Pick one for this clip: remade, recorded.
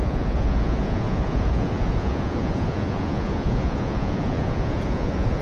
remade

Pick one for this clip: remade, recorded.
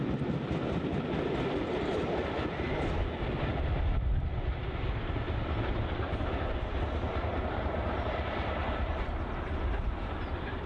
recorded